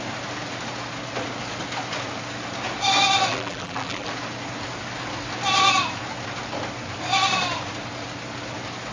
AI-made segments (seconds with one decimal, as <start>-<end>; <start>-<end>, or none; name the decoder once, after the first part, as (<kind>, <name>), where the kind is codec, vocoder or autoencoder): 3.3-4.1 (vocoder, BigVGAN v2)